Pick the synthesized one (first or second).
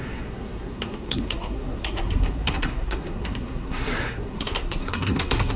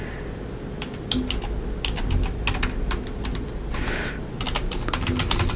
first